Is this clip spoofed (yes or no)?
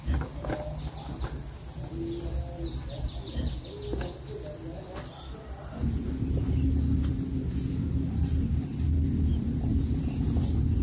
no